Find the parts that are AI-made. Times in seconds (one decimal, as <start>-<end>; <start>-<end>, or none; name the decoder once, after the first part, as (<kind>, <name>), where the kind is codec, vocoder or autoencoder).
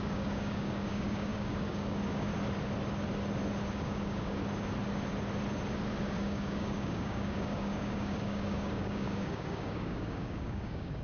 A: 0.0-2.3 (codec, DAC); 3.7-4.4; 6.0-11.0